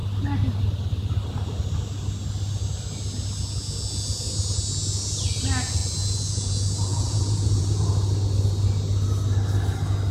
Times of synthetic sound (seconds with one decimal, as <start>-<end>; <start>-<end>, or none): 6.9-7.9